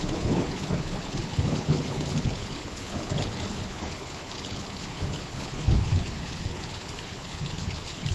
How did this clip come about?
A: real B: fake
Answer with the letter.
B